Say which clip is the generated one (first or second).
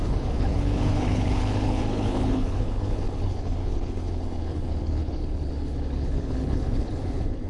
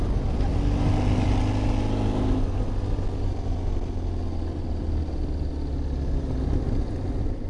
first